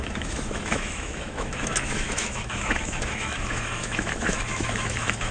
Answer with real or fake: fake